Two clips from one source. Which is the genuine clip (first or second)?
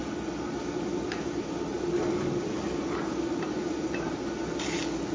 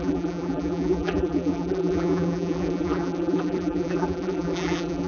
first